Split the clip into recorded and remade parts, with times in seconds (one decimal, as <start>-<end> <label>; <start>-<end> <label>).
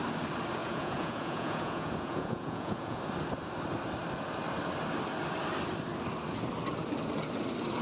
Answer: 0.0-0.6 recorded; 0.6-3.0 remade; 3.0-7.8 recorded